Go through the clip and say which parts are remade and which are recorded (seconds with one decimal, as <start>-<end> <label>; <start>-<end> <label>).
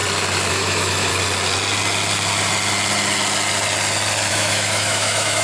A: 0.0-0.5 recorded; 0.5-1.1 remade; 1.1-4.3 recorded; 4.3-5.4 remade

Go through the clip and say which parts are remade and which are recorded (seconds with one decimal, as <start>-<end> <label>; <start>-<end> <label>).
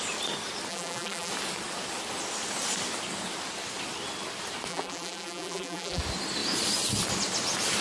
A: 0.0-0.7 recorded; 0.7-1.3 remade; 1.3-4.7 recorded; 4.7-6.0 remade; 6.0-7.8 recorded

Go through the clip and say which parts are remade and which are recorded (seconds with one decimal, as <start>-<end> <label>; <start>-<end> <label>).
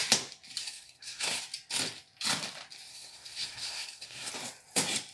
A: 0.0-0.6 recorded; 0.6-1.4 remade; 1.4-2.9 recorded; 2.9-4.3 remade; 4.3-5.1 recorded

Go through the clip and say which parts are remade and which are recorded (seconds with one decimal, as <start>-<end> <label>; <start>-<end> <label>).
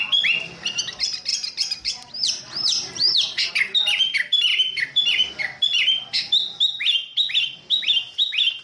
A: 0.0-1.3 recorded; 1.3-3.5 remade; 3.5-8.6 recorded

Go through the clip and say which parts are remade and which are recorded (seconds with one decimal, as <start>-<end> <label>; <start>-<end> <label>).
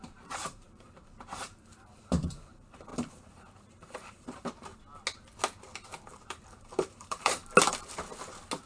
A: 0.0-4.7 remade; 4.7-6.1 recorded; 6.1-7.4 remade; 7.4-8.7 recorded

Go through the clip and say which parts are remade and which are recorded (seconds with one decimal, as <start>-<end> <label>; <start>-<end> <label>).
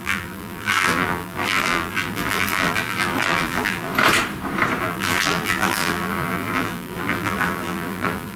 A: 0.0-3.9 remade; 3.9-4.8 recorded; 4.8-8.4 remade